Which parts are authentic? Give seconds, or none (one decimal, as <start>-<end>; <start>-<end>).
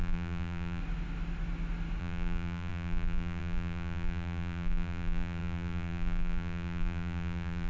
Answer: 0.8-2.0